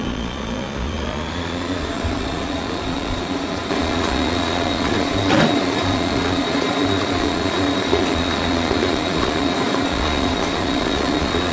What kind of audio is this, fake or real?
fake